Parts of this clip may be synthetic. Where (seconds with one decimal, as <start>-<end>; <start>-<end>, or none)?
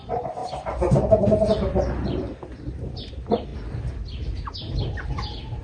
none